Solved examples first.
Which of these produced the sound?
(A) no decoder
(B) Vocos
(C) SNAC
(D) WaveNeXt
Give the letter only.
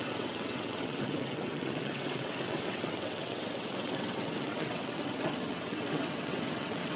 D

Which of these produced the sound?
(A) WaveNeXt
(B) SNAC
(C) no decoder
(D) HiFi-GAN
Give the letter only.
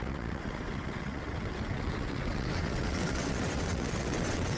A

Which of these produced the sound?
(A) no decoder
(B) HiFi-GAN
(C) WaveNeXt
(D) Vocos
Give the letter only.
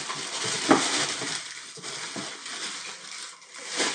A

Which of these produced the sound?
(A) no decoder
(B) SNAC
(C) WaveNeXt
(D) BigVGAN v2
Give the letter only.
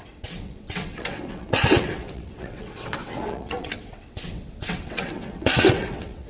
C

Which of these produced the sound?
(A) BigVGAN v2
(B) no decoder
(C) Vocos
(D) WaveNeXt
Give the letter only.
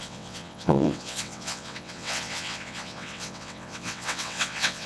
D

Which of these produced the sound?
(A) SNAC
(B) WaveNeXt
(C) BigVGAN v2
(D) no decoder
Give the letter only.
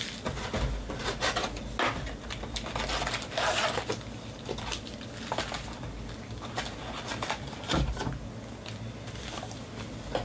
D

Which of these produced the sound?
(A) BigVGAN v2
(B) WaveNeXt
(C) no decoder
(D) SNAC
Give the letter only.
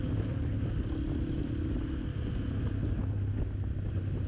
C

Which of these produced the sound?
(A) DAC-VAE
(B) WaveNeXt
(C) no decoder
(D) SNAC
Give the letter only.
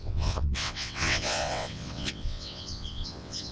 B